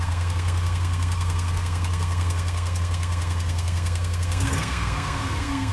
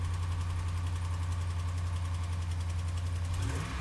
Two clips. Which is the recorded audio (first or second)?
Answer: second